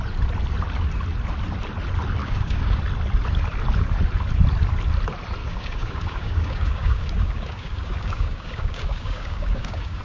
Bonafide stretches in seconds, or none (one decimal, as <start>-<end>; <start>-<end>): 0.0-2.2; 2.8-5.4